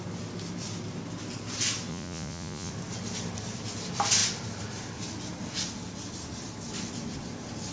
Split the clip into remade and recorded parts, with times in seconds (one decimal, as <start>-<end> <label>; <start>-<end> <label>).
0.0-1.9 recorded; 1.9-2.7 remade; 2.7-7.7 recorded